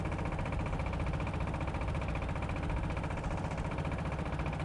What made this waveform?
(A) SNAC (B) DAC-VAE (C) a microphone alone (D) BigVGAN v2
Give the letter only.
C